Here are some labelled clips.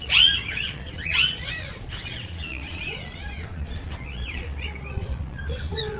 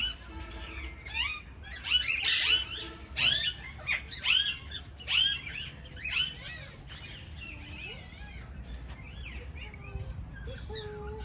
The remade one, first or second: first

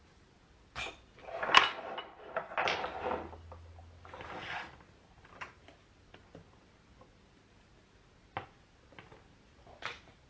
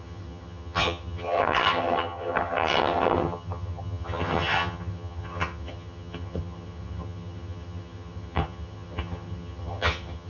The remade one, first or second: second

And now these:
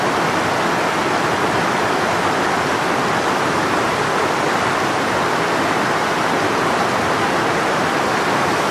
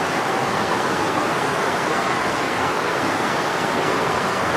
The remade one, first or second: second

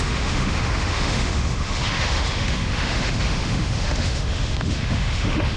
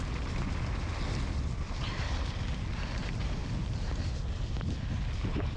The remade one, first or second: first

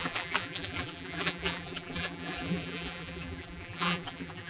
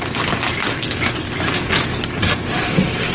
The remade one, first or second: first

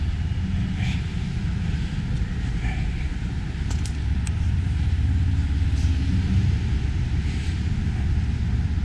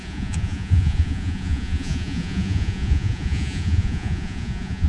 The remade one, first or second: second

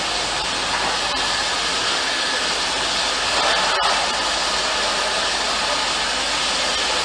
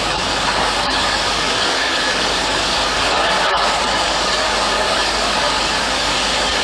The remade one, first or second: second